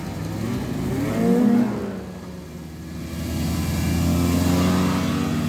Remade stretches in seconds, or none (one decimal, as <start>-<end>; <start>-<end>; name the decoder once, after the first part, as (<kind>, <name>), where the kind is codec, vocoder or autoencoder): none